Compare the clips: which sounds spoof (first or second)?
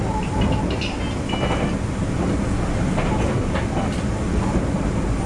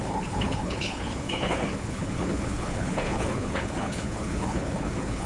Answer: second